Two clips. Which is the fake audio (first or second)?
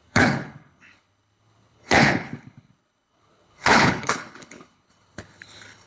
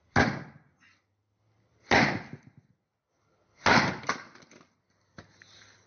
first